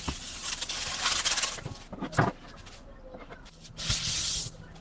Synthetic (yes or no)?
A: no